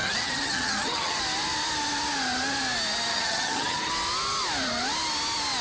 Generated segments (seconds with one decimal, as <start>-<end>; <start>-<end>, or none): 0.0-1.2; 3.1-3.9